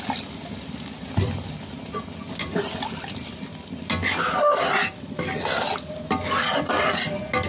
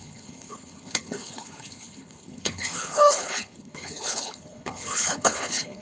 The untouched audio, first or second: first